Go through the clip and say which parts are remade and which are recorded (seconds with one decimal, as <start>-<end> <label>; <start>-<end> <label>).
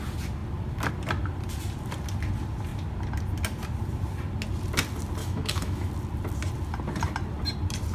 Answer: 0.0-5.2 recorded; 5.2-5.9 remade; 5.9-7.9 recorded